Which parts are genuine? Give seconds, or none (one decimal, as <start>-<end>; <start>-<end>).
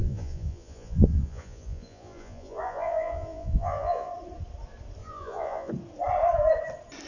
4.1-5.0; 5.7-7.1